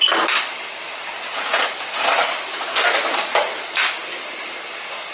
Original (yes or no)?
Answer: yes